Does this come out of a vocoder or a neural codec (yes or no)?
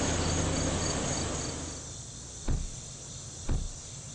no